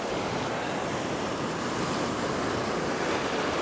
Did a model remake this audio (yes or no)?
no